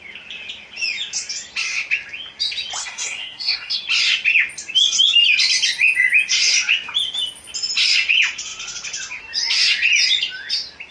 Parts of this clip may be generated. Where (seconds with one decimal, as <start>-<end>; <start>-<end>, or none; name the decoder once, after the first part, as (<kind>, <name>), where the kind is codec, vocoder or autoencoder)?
2.8-3.8 (codec, SNAC)